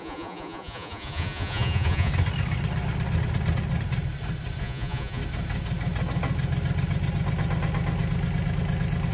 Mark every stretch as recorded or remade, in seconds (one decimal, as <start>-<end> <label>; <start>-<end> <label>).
0.0-2.1 remade; 2.1-4.6 recorded; 4.6-5.2 remade; 5.2-9.1 recorded